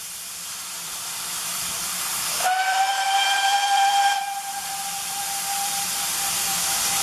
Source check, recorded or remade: remade